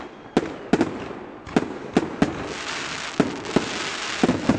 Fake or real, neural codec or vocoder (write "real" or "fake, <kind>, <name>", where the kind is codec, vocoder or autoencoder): real